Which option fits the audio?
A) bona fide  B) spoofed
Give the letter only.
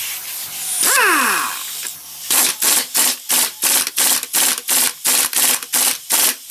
A